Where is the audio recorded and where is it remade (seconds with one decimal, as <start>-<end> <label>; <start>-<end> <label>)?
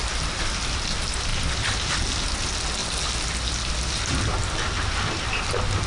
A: 0.0-5.9 recorded